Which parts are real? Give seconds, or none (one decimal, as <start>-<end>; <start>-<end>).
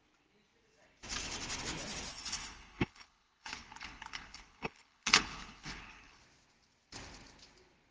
0.0-2.1; 6.2-7.9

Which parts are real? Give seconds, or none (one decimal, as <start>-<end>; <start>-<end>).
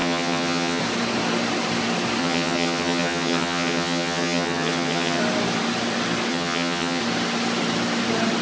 0.8-2.2; 5.2-6.3; 7.0-8.4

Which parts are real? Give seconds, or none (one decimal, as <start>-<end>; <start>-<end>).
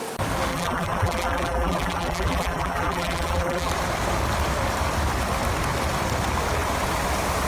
0.0-0.5; 3.7-7.5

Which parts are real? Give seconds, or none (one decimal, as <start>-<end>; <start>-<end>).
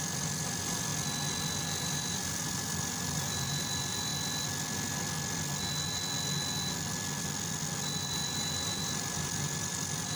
0.9-1.6; 4.1-8.0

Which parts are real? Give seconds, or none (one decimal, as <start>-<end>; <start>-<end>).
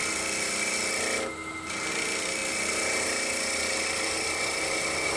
0.0-1.9; 2.4-3.9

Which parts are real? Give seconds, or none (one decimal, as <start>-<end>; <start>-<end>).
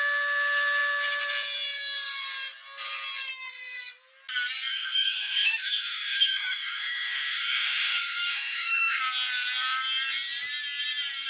0.0-4.7; 9.0-11.3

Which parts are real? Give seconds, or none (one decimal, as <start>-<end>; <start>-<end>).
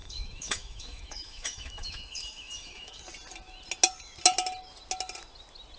3.0-5.8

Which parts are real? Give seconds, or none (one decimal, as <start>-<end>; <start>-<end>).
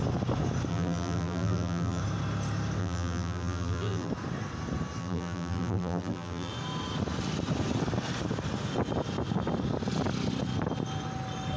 0.0-0.7; 2.0-2.8; 4.1-5.0; 6.5-11.6